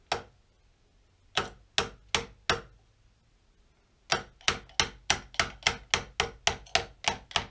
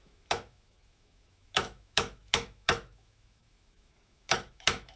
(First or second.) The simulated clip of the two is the second